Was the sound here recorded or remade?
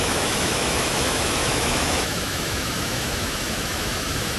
remade